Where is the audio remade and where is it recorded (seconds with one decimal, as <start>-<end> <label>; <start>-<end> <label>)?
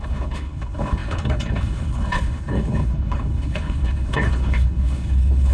0.0-5.5 remade